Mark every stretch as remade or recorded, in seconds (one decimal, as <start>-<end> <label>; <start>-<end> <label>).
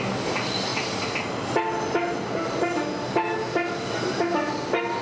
0.0-5.0 recorded